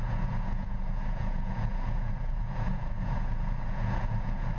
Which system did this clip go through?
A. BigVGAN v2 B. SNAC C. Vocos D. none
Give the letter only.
C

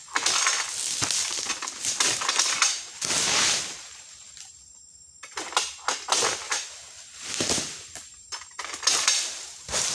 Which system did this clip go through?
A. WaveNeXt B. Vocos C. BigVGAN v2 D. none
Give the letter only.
D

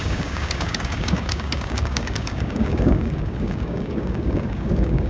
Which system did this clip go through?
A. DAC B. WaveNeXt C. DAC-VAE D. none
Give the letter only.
A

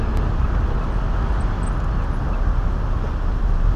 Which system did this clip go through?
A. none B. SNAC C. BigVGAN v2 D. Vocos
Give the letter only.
A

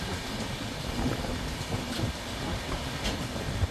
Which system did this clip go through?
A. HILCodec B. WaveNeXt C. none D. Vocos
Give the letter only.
C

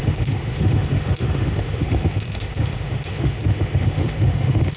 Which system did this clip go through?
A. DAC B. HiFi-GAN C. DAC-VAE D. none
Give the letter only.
C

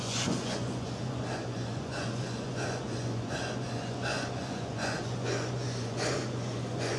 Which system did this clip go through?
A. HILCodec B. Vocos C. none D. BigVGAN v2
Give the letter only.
B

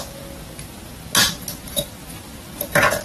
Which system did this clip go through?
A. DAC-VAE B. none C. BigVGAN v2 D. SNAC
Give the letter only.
B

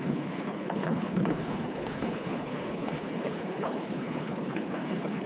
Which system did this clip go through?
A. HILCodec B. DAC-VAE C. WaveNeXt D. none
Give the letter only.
A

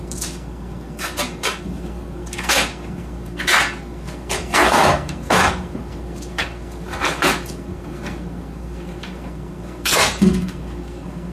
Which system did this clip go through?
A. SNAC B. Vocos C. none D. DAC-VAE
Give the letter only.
A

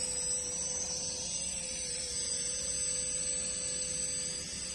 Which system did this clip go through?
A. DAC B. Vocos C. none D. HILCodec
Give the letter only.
C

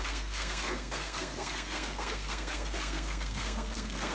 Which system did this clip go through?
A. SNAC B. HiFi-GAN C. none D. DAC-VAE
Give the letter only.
A